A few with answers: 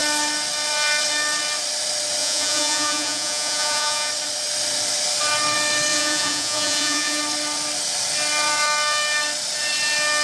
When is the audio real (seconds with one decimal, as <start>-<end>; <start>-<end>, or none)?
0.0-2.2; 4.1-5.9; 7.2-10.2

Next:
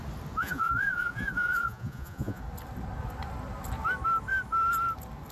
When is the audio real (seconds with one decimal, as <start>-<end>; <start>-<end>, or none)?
0.0-0.4; 2.4-5.3

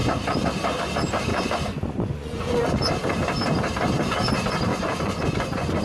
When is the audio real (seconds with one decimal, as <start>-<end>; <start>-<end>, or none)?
0.0-1.3; 2.5-4.7

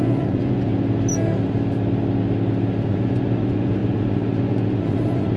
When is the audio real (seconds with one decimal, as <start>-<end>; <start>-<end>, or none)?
0.7-2.9

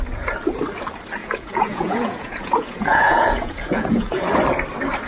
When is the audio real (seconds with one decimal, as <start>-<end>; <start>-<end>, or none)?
0.0-1.2; 4.3-5.1